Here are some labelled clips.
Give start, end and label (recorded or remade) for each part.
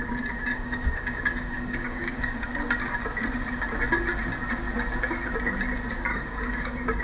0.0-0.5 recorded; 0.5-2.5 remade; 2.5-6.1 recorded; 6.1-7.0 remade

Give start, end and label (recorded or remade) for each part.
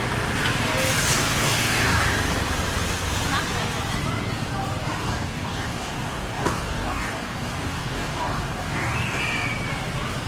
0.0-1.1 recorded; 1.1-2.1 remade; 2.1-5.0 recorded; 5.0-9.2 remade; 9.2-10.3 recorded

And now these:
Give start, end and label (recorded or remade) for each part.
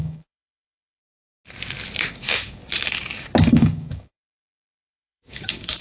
0.0-1.0 remade; 1.0-2.1 recorded; 2.1-2.6 remade; 2.6-3.4 recorded; 3.4-5.8 remade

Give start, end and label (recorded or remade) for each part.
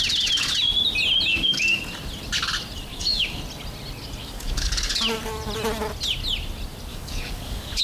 0.0-1.3 recorded; 1.3-1.8 remade; 1.8-2.9 recorded; 2.9-3.4 remade; 3.4-4.2 recorded; 4.2-4.9 remade; 4.9-6.9 recorded; 6.9-7.8 remade